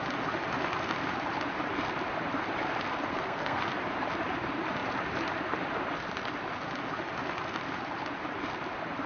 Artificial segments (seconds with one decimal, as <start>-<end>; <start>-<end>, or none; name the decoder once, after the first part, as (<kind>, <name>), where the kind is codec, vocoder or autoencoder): 3.1-3.6 (codec, SNAC)